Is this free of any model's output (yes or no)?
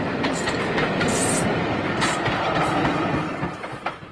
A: yes